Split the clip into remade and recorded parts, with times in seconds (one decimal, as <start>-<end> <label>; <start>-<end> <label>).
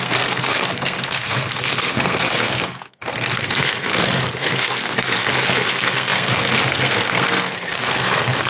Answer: 0.0-8.5 remade